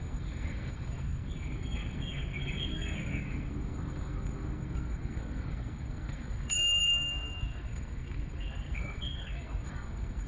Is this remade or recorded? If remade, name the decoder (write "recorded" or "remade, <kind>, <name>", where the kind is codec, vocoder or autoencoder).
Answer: remade, codec, SNAC